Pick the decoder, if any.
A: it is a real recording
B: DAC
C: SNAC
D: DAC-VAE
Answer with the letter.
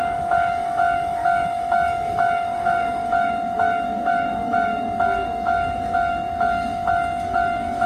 D